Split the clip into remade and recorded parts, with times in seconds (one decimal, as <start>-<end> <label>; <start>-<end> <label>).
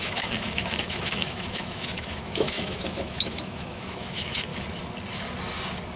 0.0-4.5 remade; 4.5-6.0 recorded